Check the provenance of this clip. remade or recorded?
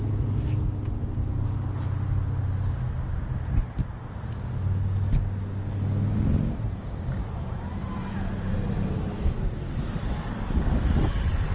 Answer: recorded